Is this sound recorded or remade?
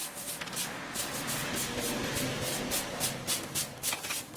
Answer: recorded